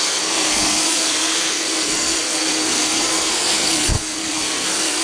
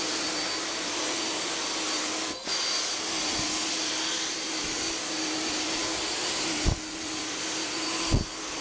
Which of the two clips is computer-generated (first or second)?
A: first